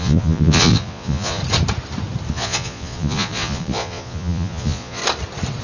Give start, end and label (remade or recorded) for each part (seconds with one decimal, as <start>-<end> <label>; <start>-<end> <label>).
0.0-1.4 remade; 1.4-2.3 recorded; 2.3-5.0 remade; 5.0-5.6 recorded